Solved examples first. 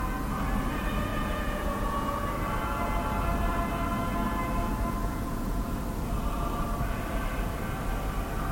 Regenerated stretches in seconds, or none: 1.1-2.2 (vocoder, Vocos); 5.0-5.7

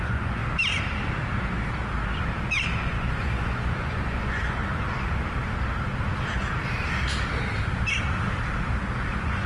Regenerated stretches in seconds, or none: 0.0-0.4 (vocoder, Vocos); 2.8-4.6; 9.1-9.5

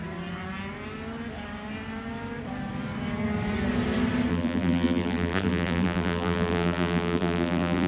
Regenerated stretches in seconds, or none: 4.3-7.9 (vocoder, BigVGAN v2)

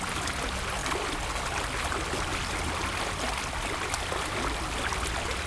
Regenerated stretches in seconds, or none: none

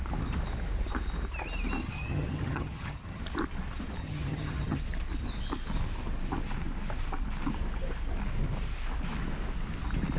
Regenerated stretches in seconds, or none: 1.8-3.2 (vocoder, HiFi-GAN); 4.0-4.8